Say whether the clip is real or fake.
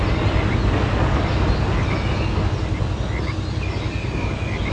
real